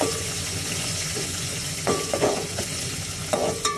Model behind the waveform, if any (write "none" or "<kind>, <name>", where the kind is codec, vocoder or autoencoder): vocoder, Vocos